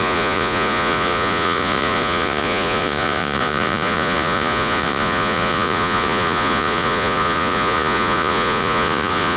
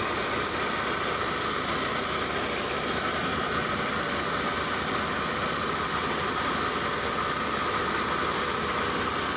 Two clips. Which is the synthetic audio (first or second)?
first